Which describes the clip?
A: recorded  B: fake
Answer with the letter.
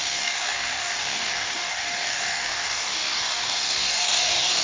B